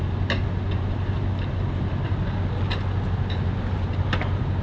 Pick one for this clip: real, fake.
real